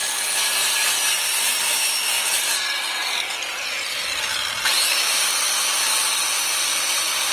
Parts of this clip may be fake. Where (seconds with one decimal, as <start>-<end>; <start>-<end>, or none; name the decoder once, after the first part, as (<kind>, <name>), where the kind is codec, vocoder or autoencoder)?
1.2-3.0 (vocoder, BigVGAN v2); 3.7-7.3